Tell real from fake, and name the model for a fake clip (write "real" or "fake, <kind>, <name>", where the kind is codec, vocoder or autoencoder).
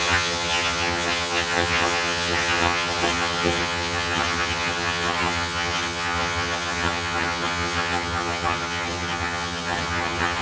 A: fake, vocoder, HiFi-GAN